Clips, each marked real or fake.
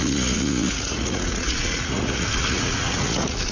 fake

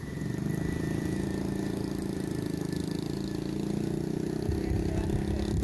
real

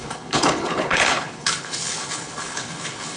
fake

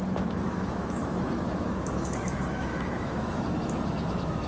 fake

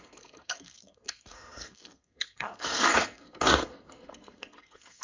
fake